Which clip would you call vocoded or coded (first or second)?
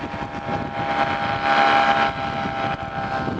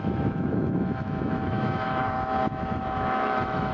second